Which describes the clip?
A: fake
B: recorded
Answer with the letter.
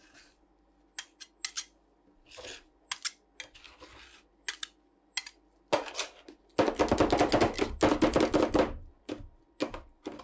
B